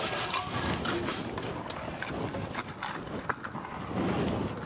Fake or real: real